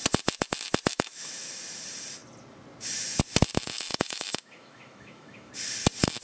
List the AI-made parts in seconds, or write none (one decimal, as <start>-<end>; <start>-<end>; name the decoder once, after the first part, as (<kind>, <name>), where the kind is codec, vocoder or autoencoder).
0.9-1.5 (autoencoder, DAC-VAE); 3.9-5.5